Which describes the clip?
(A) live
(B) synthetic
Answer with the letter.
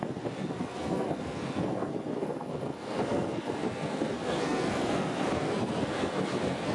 B